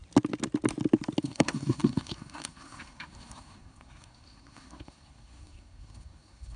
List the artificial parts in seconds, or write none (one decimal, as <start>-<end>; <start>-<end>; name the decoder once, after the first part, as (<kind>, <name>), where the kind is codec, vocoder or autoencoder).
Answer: 1.2-6.6 (codec, SNAC)